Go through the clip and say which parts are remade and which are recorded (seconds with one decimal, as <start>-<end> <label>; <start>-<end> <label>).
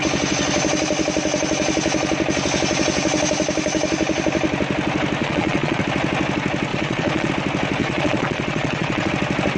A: 0.0-5.2 recorded; 5.2-5.8 remade; 5.8-6.7 recorded; 6.7-7.3 remade; 7.3-7.8 recorded; 7.8-9.1 remade; 9.1-9.6 recorded